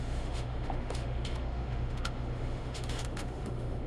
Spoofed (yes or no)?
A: yes